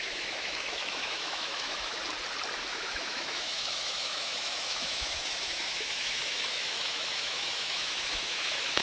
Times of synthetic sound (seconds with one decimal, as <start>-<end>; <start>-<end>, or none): 0.0-2.0; 2.7-8.8